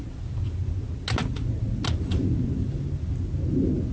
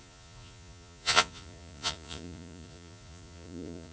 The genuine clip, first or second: first